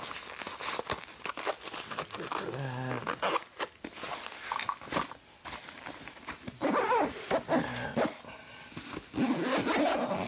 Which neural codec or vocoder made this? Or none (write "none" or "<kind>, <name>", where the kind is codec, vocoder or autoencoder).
none